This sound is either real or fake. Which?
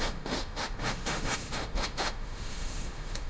fake